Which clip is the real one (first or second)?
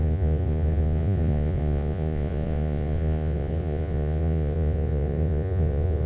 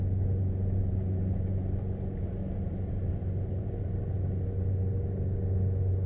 second